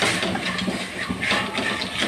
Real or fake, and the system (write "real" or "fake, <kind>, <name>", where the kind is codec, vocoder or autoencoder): real